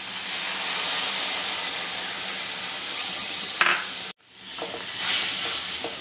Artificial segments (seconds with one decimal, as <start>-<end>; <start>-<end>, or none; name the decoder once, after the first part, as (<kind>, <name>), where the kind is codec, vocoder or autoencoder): 2.9-3.6 (vocoder, HiFi-GAN)